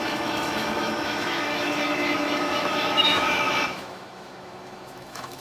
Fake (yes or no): yes